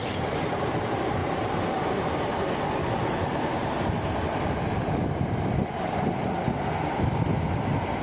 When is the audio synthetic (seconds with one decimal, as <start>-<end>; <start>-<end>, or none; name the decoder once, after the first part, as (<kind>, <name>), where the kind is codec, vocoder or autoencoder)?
0.0-1.2 (vocoder, BigVGAN v2); 5.0-8.0